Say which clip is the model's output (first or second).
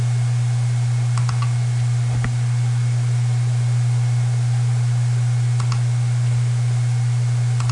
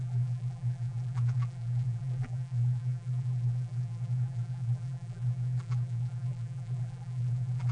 second